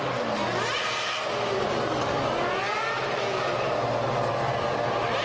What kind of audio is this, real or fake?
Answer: real